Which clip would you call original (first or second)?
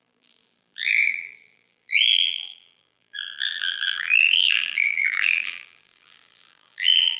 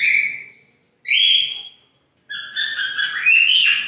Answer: second